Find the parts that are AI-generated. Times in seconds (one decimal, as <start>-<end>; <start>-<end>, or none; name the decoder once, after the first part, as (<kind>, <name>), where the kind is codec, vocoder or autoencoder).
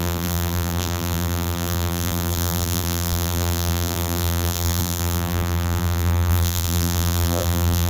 0.0-7.9 (vocoder, BigVGAN v2)